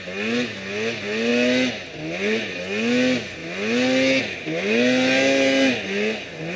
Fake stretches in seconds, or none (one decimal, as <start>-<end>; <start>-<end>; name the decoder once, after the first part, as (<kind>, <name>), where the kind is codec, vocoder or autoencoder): none